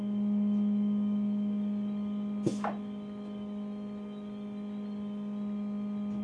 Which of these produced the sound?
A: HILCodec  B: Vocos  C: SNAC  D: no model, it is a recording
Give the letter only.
D